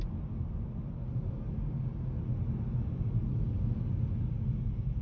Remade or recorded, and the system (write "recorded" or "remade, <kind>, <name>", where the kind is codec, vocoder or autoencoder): recorded